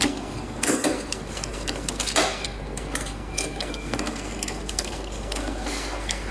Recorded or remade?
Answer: remade